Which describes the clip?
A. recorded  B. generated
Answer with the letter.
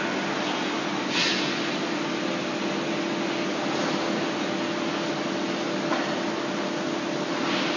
A